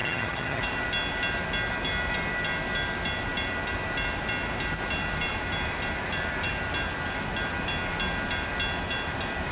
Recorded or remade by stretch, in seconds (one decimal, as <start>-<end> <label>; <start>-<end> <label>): 0.0-0.6 remade; 0.6-9.5 recorded

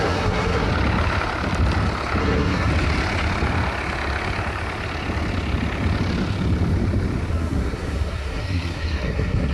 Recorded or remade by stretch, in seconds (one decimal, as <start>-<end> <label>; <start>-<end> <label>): 0.0-0.7 remade; 0.7-2.2 recorded; 2.2-2.7 remade; 2.7-7.3 recorded; 7.3-9.5 remade

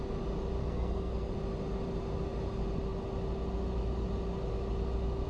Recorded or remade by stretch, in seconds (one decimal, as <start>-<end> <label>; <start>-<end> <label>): 0.0-0.6 recorded; 0.6-1.3 remade; 1.3-5.3 recorded

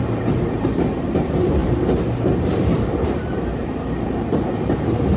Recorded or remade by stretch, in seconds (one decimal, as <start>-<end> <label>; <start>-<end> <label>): 0.0-5.2 remade

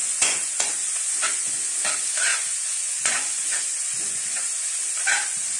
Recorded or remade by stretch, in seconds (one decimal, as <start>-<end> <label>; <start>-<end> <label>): 0.0-1.7 remade; 1.7-2.3 recorded; 2.3-4.8 remade; 4.8-5.6 recorded

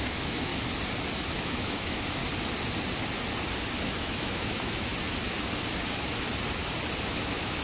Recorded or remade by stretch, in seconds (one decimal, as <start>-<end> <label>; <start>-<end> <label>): 0.0-0.5 remade; 0.5-1.4 recorded; 1.4-2.2 remade; 2.2-3.8 recorded; 3.8-4.9 remade; 4.9-7.0 recorded; 7.0-7.6 remade